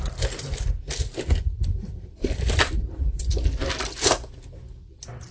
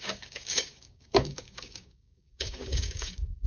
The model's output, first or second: second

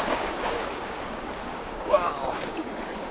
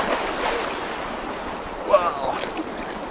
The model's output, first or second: first